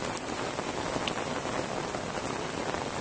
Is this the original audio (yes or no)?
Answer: yes